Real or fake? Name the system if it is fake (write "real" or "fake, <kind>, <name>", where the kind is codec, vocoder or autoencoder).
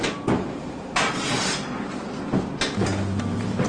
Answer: real